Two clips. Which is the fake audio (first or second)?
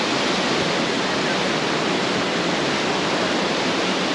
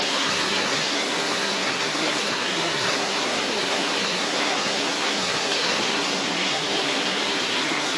second